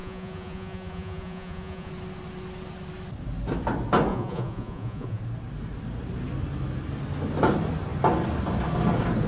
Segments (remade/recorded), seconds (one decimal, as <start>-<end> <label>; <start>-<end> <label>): 0.0-1.9 remade; 1.9-4.1 recorded; 4.1-5.2 remade; 5.2-9.3 recorded